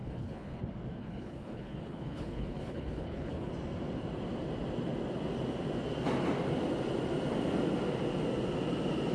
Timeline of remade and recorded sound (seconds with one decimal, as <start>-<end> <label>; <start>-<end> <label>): 0.0-0.6 remade; 0.6-1.0 recorded; 1.0-3.5 remade; 3.5-9.1 recorded